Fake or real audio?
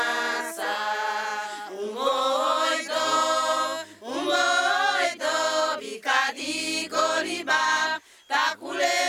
real